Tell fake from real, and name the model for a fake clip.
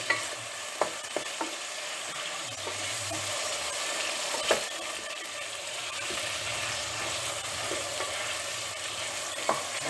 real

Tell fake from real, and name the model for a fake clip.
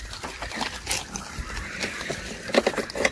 real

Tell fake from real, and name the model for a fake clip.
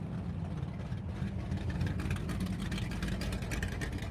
real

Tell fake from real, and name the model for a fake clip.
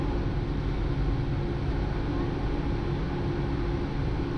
real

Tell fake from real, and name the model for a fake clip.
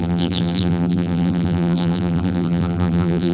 fake, vocoder, BigVGAN v2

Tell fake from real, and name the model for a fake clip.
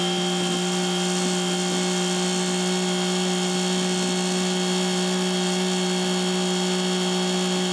real